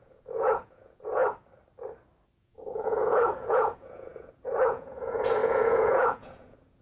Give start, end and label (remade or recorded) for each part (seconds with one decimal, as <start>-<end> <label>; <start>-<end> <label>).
0.0-1.2 remade; 1.2-2.4 recorded; 2.4-6.8 remade